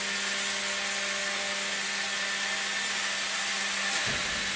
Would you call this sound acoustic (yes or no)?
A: yes